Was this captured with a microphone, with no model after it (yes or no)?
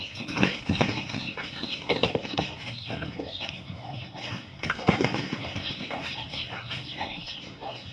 no